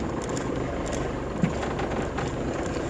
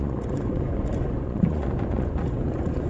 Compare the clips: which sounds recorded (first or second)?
first